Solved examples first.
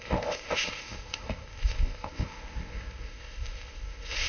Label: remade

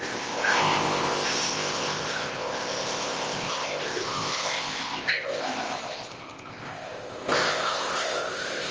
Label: remade